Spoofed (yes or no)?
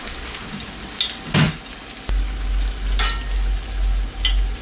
no